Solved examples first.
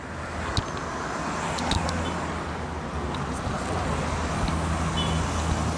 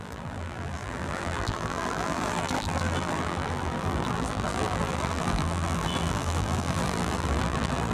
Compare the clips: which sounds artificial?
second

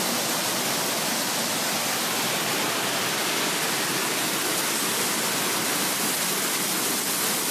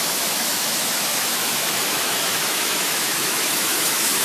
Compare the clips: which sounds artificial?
second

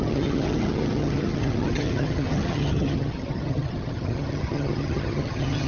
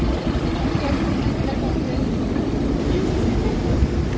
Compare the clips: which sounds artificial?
first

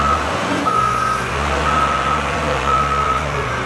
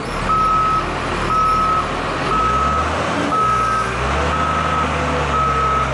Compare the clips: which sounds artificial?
first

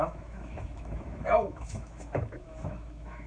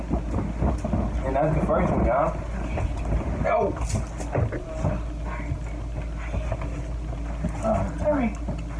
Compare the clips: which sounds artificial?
first